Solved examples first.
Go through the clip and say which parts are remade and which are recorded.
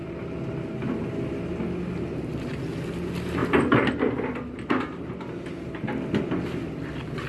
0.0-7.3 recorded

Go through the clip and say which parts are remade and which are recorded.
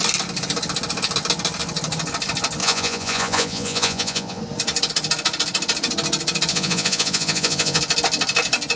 0.0-2.6 recorded; 2.6-4.4 remade; 4.4-6.5 recorded; 6.5-7.8 remade; 7.8-8.8 recorded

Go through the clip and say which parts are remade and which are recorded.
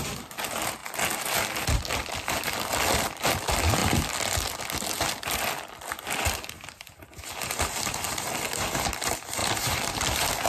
0.0-10.5 recorded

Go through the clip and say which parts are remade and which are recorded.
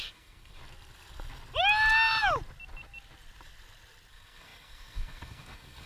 0.0-0.6 remade; 0.6-4.1 recorded; 4.1-5.9 remade